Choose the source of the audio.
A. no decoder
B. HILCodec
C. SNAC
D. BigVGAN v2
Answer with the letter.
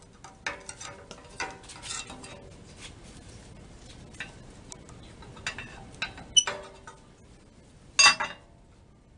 A